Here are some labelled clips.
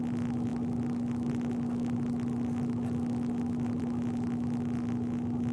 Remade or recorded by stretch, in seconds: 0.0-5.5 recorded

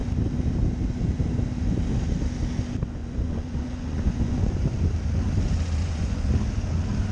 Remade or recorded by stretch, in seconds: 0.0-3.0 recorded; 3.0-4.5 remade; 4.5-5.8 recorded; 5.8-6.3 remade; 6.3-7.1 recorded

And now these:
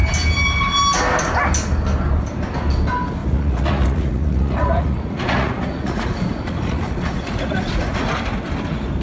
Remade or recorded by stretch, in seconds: 0.0-3.2 recorded; 3.2-8.0 remade; 8.0-9.0 recorded

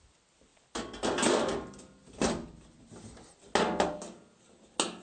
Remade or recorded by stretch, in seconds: 0.0-5.0 recorded